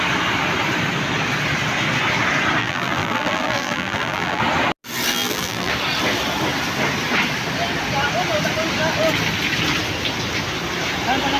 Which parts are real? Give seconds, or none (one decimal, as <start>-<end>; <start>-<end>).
0.0-2.6; 4.4-5.1; 5.7-11.4